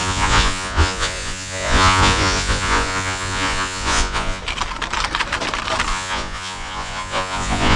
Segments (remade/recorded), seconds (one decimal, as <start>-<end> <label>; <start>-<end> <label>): 0.0-4.4 remade; 4.4-5.9 recorded; 5.9-7.8 remade